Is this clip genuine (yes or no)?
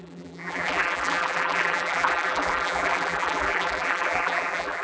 no